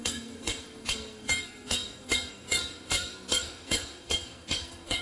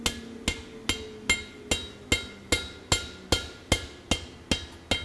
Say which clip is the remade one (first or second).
first